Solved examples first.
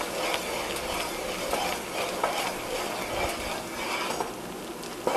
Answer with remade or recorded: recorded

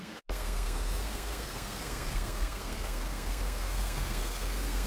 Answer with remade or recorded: remade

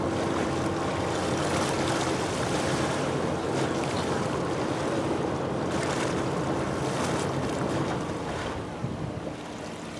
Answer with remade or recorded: recorded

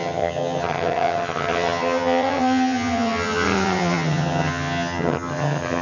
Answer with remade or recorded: remade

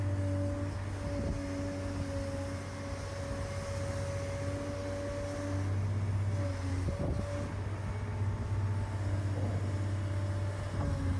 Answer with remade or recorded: recorded